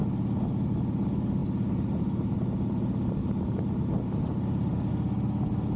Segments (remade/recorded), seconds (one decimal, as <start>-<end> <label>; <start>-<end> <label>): 0.0-5.8 recorded